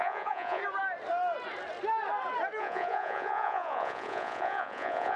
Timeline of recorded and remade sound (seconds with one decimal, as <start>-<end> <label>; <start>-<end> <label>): 0.0-0.6 remade; 0.6-2.6 recorded; 2.6-5.2 remade

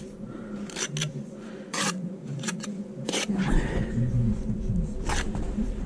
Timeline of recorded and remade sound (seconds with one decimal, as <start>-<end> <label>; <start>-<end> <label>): 0.0-1.1 recorded; 1.1-4.6 remade; 4.6-5.9 recorded

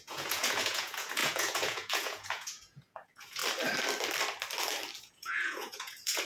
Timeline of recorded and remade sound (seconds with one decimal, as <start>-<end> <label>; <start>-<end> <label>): 0.0-3.4 remade; 3.4-5.0 recorded; 5.0-6.2 remade

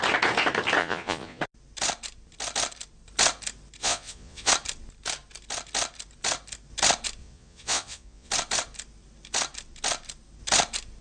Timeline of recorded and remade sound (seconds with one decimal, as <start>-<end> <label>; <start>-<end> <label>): 0.0-0.8 recorded; 0.8-1.4 remade; 1.4-3.8 recorded; 3.8-4.5 remade; 4.5-7.2 recorded; 7.2-8.3 remade; 8.3-11.0 recorded

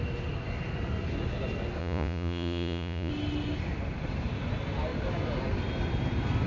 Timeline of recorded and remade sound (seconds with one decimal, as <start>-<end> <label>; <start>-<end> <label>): 0.0-1.8 recorded; 1.8-3.1 remade; 3.1-6.5 recorded

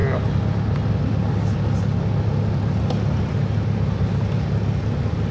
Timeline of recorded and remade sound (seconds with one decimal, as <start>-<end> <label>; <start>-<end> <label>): 0.0-5.3 recorded

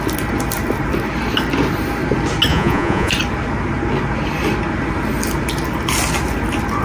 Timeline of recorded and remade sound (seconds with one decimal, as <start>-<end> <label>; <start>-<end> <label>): 0.0-2.5 recorded; 2.5-3.1 remade; 3.1-6.8 recorded